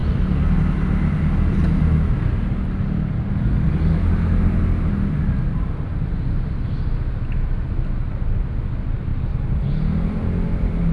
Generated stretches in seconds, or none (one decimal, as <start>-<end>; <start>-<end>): 9.1-9.6